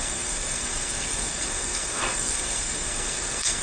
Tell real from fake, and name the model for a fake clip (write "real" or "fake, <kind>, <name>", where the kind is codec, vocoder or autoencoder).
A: fake, codec, SNAC